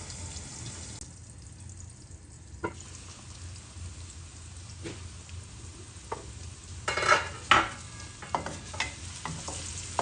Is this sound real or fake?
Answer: real